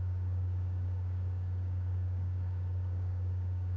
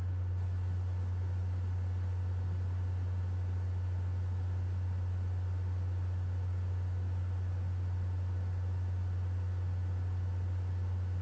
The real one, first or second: second